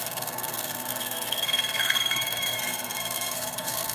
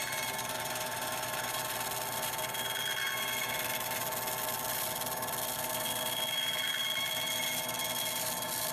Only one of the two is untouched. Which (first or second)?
second